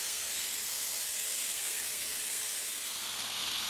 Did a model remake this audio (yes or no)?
yes